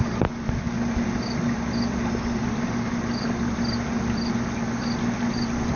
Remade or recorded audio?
recorded